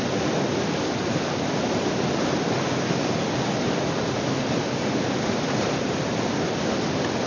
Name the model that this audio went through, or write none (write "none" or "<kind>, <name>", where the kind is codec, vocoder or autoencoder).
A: none